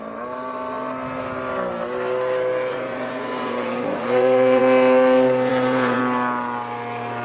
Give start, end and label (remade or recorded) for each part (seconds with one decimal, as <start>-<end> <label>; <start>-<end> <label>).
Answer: 0.0-2.7 recorded; 2.7-4.6 remade; 4.6-5.5 recorded; 5.5-6.0 remade; 6.0-7.2 recorded